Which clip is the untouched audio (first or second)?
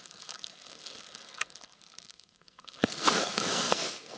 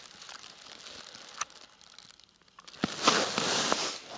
second